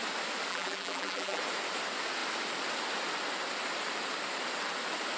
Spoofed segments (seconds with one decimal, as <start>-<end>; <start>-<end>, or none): 0.5-1.4